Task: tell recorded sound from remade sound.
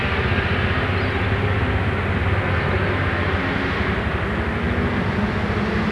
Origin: recorded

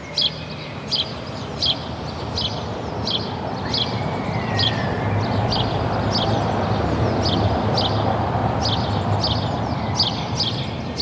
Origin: recorded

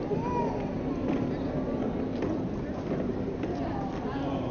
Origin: recorded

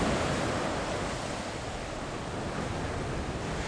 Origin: recorded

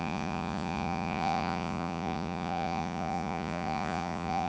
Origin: remade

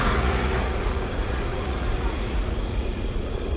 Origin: remade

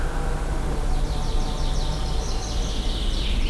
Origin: recorded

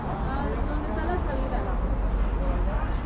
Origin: recorded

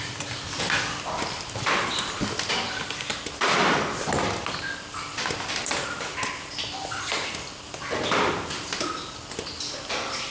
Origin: recorded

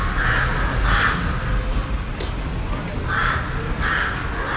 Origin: recorded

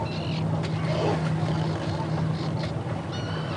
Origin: recorded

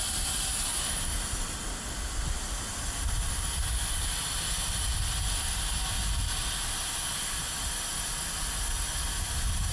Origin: recorded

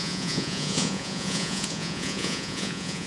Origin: remade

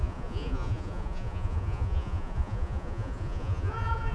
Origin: remade